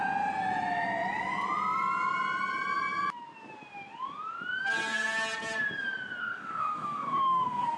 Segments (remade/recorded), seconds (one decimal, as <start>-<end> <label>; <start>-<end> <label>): 0.0-6.2 recorded; 6.2-7.8 remade